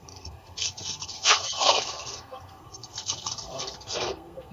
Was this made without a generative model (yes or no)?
no